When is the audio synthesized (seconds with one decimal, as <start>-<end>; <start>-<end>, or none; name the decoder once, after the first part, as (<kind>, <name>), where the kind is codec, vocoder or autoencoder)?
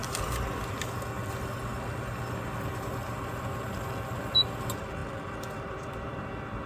0.0-0.5 (vocoder, BigVGAN v2); 5.0-6.3